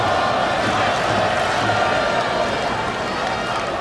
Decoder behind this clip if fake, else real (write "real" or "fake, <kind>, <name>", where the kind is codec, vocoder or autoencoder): real